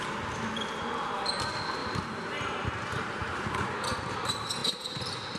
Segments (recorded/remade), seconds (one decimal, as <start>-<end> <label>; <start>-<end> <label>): 0.0-1.8 recorded; 1.8-4.0 remade; 4.0-5.4 recorded

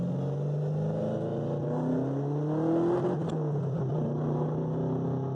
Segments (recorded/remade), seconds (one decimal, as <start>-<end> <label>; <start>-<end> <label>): 0.0-5.3 recorded

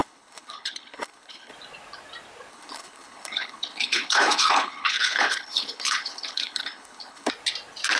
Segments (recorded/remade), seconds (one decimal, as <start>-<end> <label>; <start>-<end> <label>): 0.0-1.5 remade; 1.5-2.5 recorded; 2.5-7.3 remade; 7.3-8.0 recorded

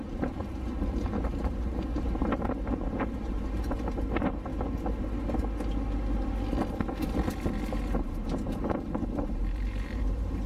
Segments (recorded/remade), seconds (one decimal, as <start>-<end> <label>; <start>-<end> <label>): 0.0-4.5 remade; 4.5-7.7 recorded; 7.7-10.5 remade

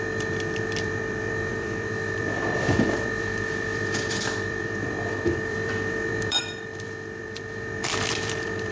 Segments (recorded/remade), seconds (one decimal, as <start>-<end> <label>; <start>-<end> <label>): 0.0-8.7 remade

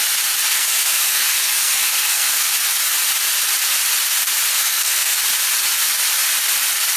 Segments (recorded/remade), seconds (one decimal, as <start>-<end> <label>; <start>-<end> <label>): 0.0-0.5 recorded; 0.5-2.5 remade; 2.5-4.5 recorded; 4.5-5.2 remade; 5.2-7.0 recorded